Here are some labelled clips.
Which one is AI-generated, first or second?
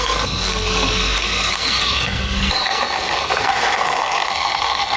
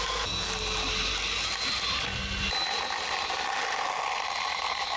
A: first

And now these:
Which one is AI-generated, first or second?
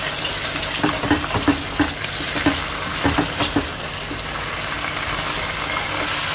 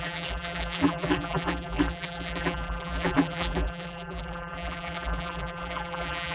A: second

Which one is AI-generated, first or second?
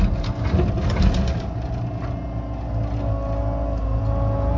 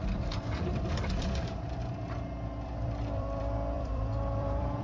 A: second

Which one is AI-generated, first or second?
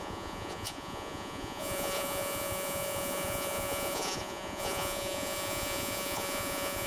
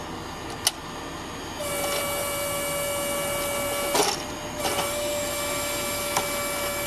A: first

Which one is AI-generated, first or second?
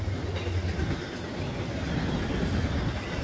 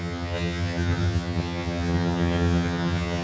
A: second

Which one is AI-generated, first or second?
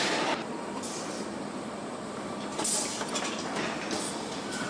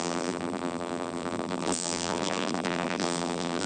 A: second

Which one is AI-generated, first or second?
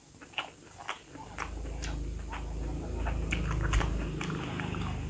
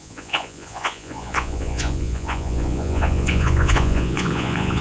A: second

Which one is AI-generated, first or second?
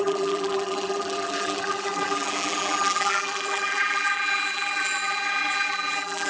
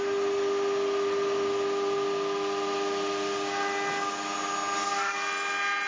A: first